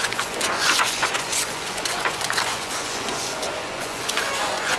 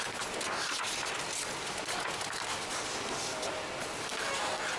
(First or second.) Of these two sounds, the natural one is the second